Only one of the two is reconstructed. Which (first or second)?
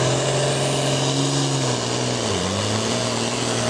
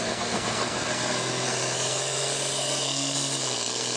second